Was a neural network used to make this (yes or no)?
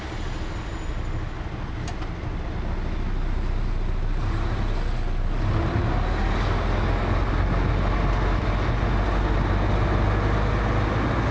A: no